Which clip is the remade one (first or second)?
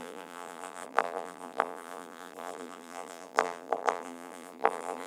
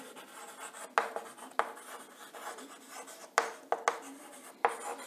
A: first